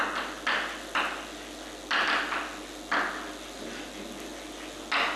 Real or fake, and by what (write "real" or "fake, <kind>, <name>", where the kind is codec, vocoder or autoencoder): real